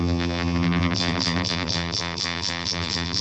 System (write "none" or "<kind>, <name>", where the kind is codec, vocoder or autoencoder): vocoder, BigVGAN v2